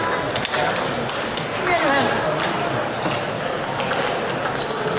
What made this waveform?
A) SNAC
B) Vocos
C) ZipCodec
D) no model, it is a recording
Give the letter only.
D